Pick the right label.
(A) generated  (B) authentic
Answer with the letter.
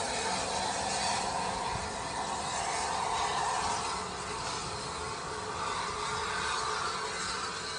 B